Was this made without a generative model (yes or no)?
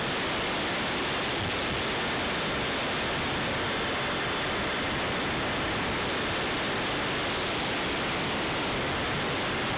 yes